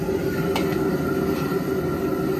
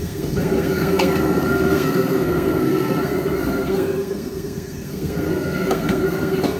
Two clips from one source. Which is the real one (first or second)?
first